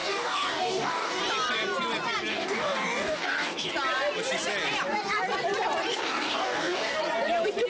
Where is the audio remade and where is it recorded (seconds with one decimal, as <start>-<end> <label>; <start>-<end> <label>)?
0.0-1.2 remade; 1.2-2.3 recorded; 2.3-3.7 remade; 3.7-5.9 recorded; 5.9-7.0 remade; 7.0-7.7 recorded